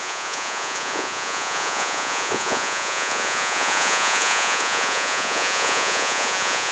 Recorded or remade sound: remade